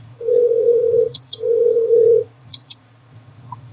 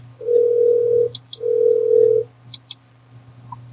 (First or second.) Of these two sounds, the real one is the second